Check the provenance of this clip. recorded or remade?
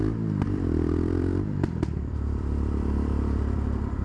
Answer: remade